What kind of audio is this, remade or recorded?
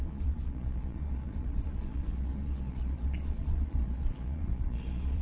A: remade